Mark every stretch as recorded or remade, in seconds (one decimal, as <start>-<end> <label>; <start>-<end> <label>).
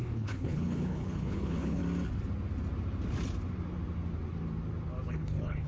0.0-1.8 remade; 1.8-5.1 recorded; 5.1-5.7 remade